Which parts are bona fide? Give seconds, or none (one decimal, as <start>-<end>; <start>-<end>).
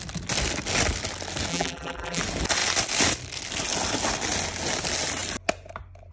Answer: 0.0-1.5; 2.2-6.1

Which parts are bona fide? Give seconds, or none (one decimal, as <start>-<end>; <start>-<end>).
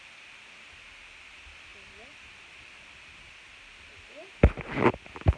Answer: 0.0-5.4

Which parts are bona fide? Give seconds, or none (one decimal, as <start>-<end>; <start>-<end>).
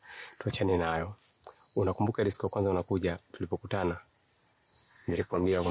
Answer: 0.0-4.8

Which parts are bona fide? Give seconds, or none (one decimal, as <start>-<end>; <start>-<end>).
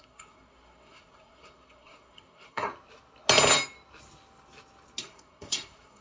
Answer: 2.7-5.0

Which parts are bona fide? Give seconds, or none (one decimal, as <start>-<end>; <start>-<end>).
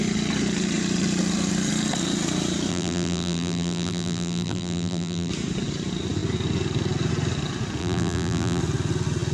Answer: 0.0-2.7; 5.3-7.8; 8.6-9.3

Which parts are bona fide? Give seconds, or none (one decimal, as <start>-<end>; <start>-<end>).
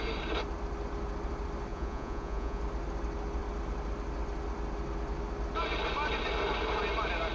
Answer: 0.0-1.7; 2.6-7.3